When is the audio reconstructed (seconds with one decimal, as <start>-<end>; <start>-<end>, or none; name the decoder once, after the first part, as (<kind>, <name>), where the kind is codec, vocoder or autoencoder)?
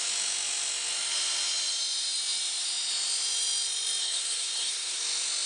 4.0-5.0 (codec, SNAC)